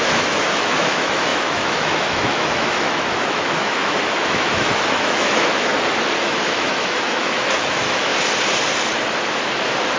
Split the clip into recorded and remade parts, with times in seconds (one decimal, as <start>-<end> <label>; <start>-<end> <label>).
0.0-5.7 remade; 5.7-6.2 recorded; 6.2-8.1 remade; 8.1-10.0 recorded